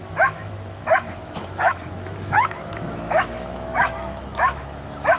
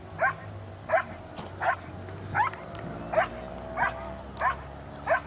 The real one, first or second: second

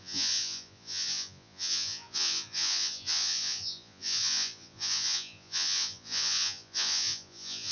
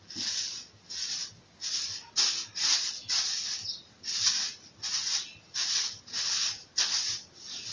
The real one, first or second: second